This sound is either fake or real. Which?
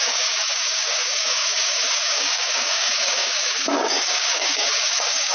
fake